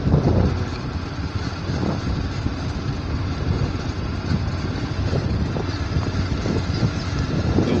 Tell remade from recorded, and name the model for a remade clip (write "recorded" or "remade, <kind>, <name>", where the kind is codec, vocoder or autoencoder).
recorded